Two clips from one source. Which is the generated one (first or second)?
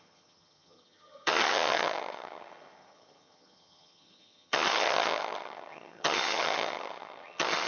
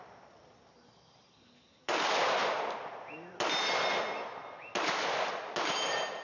first